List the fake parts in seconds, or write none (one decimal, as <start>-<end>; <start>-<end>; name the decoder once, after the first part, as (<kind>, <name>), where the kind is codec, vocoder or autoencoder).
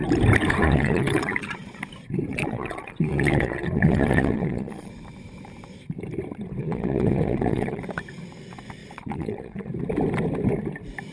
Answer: 0.6-1.8 (vocoder, Vocos); 2.3-4.9; 6.6-7.8; 8.8-9.7